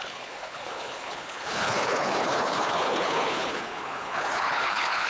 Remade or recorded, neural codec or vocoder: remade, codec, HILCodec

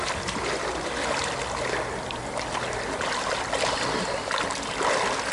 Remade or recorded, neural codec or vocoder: recorded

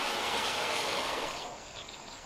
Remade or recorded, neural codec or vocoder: remade, codec, SNAC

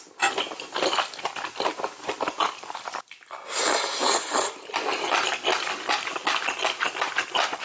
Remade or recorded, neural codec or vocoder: recorded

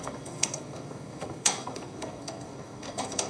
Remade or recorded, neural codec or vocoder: remade, codec, SNAC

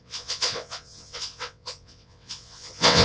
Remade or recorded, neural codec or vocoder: remade, vocoder, WaveNeXt